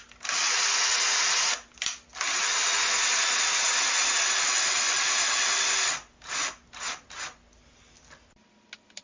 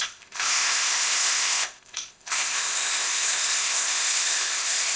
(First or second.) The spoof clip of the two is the second